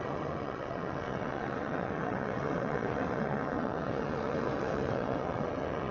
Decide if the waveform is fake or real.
fake